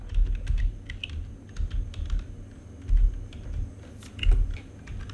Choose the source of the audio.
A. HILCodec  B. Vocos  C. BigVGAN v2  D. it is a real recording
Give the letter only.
D